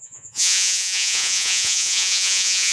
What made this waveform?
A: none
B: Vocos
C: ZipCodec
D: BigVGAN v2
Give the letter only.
B